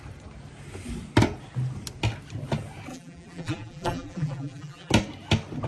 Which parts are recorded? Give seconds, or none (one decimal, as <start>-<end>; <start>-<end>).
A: 0.0-2.9; 4.9-5.7